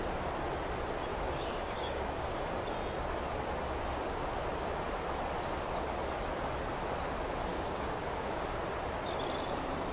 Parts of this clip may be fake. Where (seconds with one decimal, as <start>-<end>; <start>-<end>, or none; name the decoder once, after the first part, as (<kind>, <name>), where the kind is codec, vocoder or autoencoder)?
1.1-2.5 (codec, DAC); 7.5-8.6